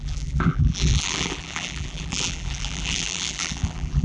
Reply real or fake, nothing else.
fake